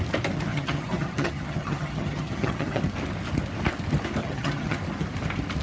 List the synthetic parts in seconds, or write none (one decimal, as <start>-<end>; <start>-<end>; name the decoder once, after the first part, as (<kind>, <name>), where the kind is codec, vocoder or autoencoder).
0.5-2.8 (vocoder, HiFi-GAN); 4.2-4.8